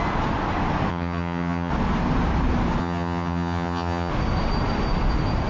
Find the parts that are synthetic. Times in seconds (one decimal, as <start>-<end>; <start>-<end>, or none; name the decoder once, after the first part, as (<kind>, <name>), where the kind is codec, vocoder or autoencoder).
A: 0.9-1.7 (vocoder, HiFi-GAN); 2.8-4.1